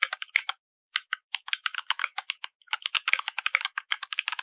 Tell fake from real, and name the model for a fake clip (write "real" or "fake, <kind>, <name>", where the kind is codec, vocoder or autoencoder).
fake, codec, DAC